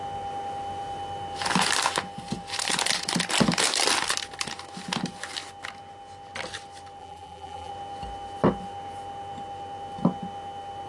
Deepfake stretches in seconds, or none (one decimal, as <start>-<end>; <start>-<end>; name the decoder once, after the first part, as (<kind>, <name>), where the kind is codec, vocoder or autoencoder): 7.0-7.7 (vocoder, BigVGAN v2)